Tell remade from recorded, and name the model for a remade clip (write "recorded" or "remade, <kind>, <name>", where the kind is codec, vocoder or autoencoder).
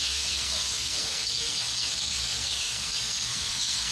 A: remade, codec, SNAC